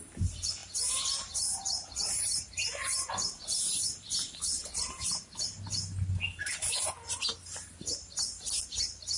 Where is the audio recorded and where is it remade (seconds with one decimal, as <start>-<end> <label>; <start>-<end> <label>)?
0.0-0.6 recorded; 0.6-3.1 remade; 3.1-9.2 recorded